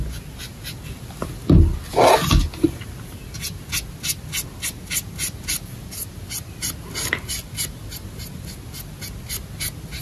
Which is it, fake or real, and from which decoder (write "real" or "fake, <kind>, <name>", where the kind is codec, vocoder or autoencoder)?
real